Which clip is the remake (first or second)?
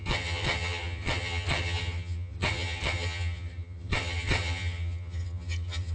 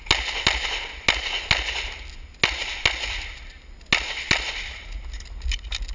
first